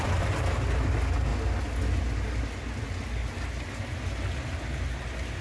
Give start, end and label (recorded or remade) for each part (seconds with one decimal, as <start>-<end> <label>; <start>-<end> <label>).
0.0-5.4 recorded